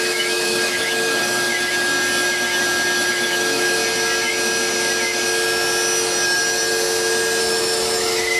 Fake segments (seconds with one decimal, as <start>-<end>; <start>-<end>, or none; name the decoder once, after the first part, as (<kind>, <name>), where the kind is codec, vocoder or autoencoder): 0.0-1.5 (autoencoder, DAC-VAE); 3.1-3.8; 7.4-8.4